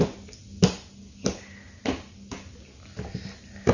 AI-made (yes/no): no